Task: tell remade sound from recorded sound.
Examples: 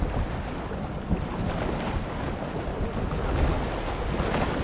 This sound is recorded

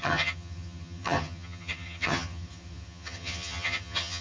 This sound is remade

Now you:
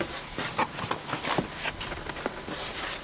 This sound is recorded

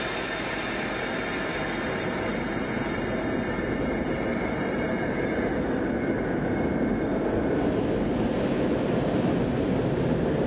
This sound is recorded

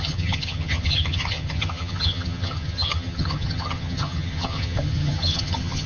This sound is remade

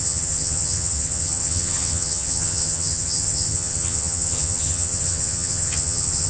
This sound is remade